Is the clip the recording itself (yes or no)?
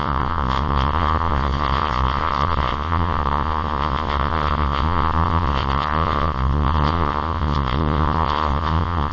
no